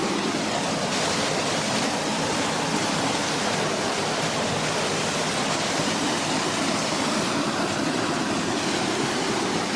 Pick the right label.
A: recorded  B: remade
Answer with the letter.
B